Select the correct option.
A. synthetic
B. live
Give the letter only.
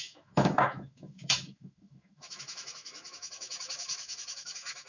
A